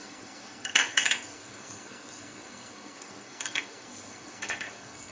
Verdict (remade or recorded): remade